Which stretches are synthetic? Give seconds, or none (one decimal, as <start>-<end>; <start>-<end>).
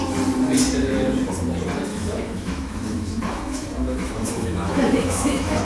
1.9-5.6